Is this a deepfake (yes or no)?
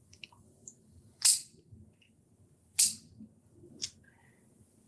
no